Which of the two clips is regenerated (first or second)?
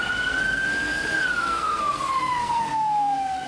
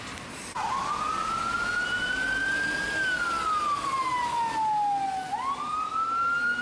first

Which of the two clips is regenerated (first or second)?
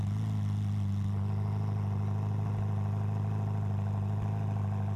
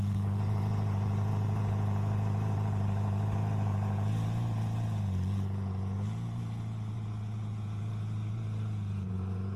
second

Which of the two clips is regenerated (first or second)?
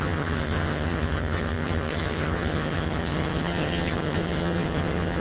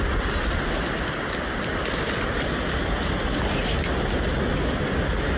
first